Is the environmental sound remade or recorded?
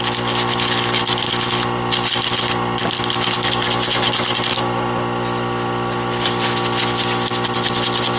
recorded